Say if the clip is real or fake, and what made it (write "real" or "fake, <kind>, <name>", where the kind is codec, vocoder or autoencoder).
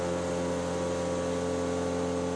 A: real